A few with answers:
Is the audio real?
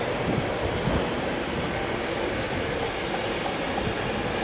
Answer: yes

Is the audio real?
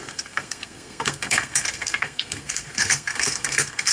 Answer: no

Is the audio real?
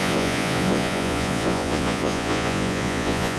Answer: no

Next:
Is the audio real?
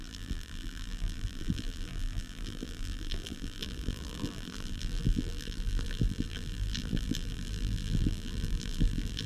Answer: no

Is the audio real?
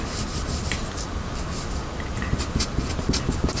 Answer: yes